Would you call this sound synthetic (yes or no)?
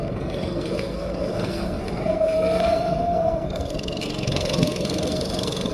yes